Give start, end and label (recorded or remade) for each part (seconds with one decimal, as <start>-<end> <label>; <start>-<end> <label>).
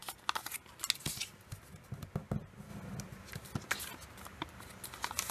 0.0-5.3 recorded